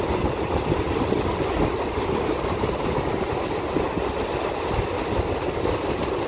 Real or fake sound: real